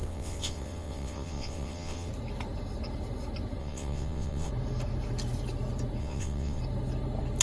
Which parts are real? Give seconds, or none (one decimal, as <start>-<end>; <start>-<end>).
2.1-3.6; 4.5-6.0; 6.6-7.4